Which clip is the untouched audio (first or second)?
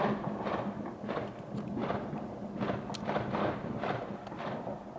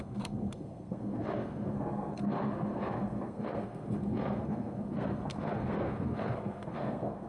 first